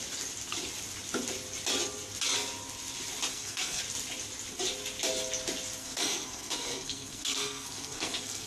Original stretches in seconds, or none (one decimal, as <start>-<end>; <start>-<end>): 0.0-3.3; 3.8-5.8